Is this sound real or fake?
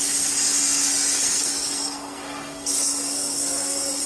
fake